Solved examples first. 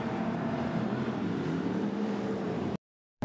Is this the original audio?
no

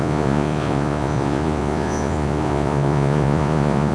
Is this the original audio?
no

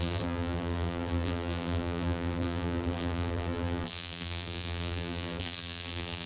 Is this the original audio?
no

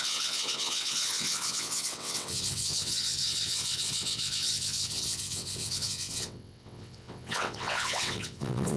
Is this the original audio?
no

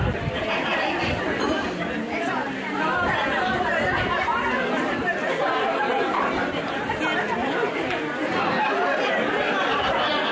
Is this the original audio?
yes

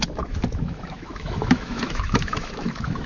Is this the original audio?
no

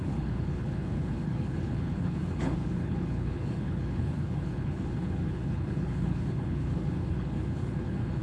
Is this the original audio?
no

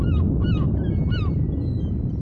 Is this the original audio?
yes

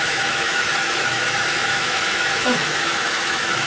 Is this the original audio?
no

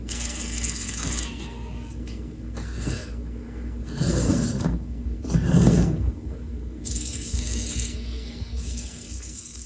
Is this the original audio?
no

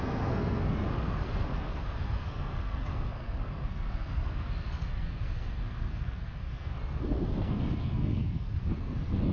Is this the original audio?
no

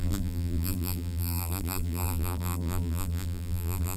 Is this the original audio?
no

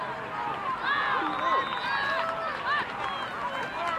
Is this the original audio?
yes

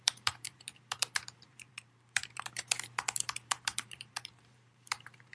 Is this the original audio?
no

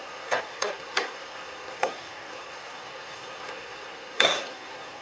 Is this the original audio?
no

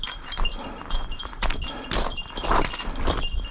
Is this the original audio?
yes